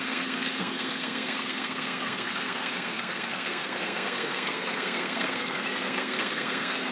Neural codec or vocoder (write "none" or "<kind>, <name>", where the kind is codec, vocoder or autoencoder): codec, SNAC